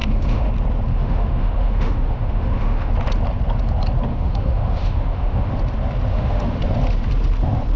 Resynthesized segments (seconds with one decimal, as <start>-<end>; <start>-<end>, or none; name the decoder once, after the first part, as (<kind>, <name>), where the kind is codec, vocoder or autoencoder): 0.0-0.5 (autoencoder, DAC-VAE); 0.9-2.9; 4.1-5.5; 6.1-6.6